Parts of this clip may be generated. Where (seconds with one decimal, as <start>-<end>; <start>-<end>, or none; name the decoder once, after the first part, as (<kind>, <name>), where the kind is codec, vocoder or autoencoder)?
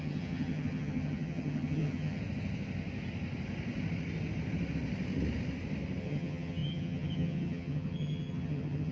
0.0-2.2 (vocoder, HiFi-GAN); 6.0-8.9